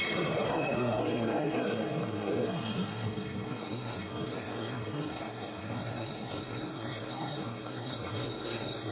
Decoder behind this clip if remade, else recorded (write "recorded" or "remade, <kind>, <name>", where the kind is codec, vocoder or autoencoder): remade, codec, SNAC